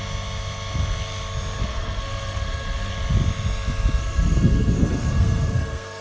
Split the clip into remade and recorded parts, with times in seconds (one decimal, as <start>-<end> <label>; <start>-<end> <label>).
0.0-1.6 recorded; 1.6-2.9 remade; 2.9-4.0 recorded; 4.0-6.0 remade